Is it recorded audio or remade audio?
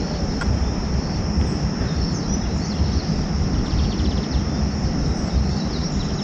recorded